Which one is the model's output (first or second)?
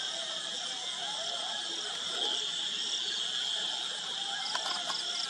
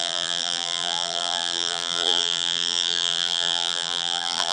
second